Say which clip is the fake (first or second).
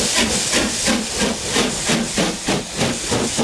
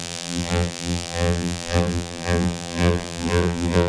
second